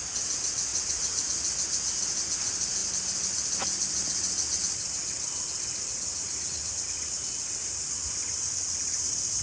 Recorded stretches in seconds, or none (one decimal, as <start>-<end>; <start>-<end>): 0.0-0.7; 1.3-6.1; 6.7-9.4